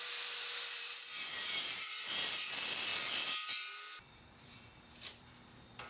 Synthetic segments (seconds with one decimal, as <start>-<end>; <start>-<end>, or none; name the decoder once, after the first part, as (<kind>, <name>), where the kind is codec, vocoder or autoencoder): 0.0-2.9 (vocoder, BigVGAN v2); 4.1-5.9